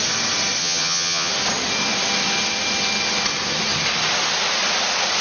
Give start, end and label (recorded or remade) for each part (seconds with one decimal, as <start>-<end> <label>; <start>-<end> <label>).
0.0-0.6 recorded; 0.6-1.3 remade; 1.3-5.2 recorded